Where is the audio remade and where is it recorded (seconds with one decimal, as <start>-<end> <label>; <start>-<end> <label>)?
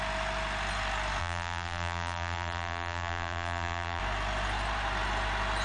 0.0-1.2 recorded; 1.2-4.0 remade; 4.0-5.6 recorded